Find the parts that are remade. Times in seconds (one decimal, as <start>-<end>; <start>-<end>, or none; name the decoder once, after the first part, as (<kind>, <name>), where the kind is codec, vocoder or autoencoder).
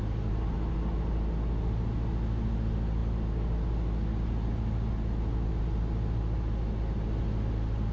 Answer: none